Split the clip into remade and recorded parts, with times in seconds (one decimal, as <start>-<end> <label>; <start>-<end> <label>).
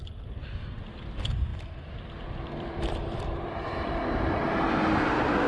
0.0-1.5 recorded; 1.5-4.5 remade; 4.5-5.5 recorded